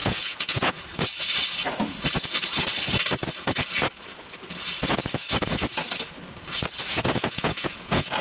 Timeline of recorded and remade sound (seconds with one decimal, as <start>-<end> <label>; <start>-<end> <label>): 0.0-0.8 remade; 0.8-6.9 recorded; 6.9-8.2 remade